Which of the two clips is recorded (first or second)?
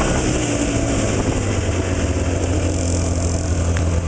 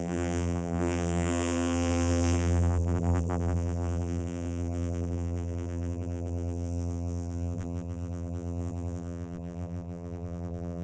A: first